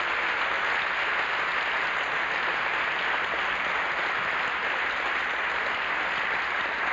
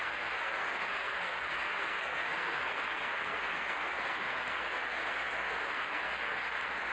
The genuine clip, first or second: first